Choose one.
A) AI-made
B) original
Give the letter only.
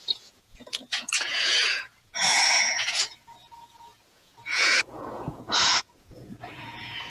A